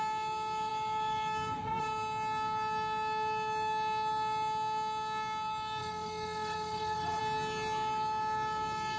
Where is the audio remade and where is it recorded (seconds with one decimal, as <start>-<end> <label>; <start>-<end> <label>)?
0.0-5.8 recorded; 5.8-7.2 remade; 7.2-9.0 recorded

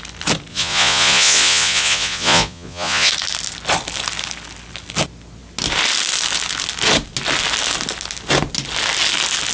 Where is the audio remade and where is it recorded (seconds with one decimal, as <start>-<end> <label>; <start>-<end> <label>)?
0.0-0.5 recorded; 0.5-3.1 remade; 3.1-9.5 recorded

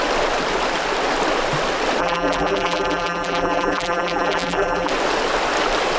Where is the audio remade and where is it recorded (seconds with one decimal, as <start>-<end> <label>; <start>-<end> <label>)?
0.0-2.0 recorded; 2.0-4.9 remade; 4.9-6.0 recorded